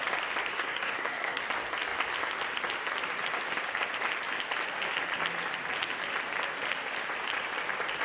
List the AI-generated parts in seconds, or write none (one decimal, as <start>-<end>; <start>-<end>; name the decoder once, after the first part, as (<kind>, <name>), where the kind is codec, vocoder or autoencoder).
0.5-1.4 (codec, SNAC)